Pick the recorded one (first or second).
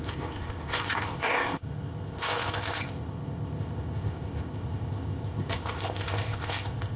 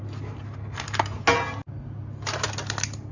second